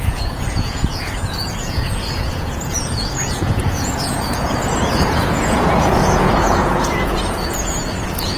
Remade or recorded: remade